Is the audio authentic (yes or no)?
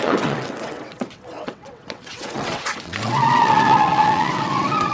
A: no